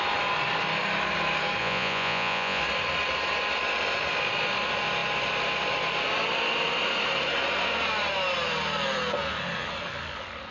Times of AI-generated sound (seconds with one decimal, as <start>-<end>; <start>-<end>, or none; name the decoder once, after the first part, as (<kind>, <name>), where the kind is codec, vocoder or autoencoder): 1.6-2.6 (vocoder, Vocos)